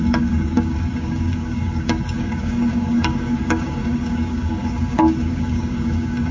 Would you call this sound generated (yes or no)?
yes